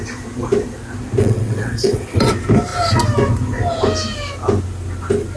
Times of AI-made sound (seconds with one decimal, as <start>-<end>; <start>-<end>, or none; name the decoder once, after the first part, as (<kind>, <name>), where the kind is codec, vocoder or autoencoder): 1.2-2.3 (vocoder, WaveNeXt)